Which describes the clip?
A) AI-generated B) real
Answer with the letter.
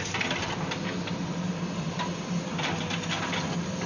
B